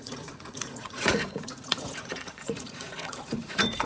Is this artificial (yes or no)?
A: yes